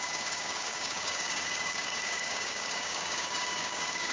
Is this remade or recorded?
remade